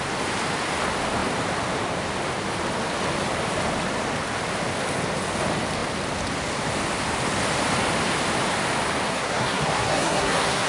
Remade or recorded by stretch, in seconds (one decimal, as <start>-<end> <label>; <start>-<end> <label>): 0.0-9.1 recorded; 9.1-10.7 remade